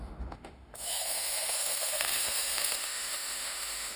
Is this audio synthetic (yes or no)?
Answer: yes